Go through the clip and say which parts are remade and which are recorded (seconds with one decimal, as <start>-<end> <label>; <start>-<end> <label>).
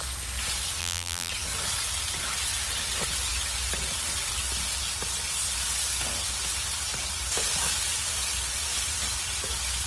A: 0.0-0.8 recorded; 0.8-1.3 remade; 1.3-9.9 recorded